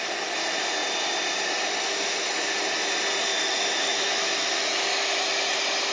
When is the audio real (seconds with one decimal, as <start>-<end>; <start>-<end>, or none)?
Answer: 0.0-3.3; 5.2-5.9